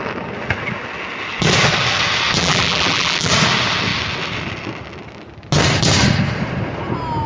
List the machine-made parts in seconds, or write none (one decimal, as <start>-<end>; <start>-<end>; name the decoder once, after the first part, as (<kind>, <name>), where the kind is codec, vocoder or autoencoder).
2.4-3.3 (vocoder, BigVGAN v2)